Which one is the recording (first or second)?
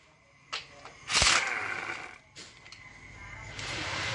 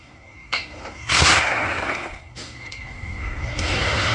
first